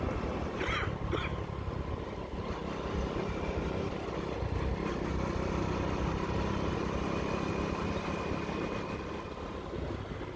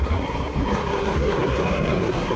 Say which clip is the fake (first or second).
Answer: second